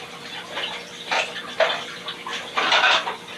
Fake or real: real